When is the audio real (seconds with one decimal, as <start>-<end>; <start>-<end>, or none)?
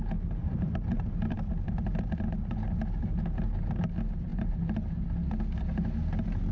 0.0-0.4; 1.8-4.3; 5.1-6.5